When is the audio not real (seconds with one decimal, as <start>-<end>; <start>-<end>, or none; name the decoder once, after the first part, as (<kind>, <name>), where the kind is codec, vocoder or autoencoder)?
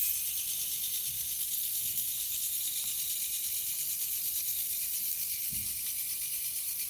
1.1-2.6 (codec, SNAC); 5.1-5.8